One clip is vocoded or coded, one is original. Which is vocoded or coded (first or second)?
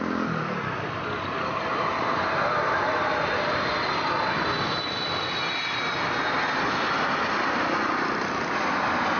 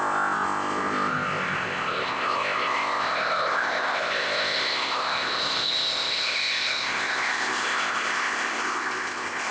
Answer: second